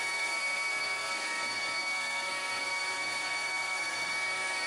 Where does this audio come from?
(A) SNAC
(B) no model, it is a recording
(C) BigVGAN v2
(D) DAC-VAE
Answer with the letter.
A